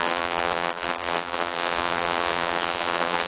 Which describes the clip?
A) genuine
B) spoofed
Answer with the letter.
B